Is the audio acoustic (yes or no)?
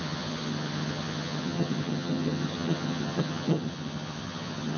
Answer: no